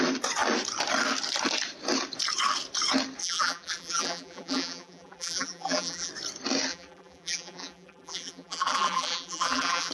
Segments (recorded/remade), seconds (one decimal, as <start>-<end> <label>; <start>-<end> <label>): 0.0-3.2 recorded; 3.2-6.1 remade; 6.1-6.7 recorded; 6.7-9.9 remade